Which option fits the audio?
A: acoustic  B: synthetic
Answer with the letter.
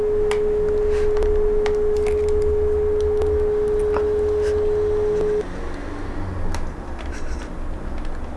A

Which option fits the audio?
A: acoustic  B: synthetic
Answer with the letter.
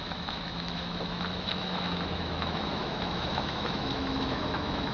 B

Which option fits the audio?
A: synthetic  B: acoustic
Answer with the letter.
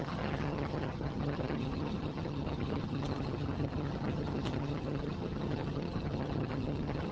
A